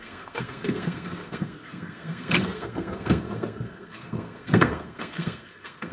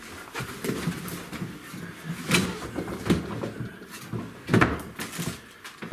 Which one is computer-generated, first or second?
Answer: first